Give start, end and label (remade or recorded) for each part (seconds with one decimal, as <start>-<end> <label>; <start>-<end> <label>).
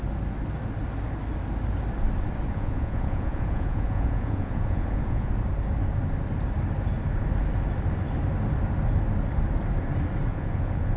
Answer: 0.0-2.5 recorded; 2.5-5.3 remade; 5.3-10.3 recorded; 10.3-11.0 remade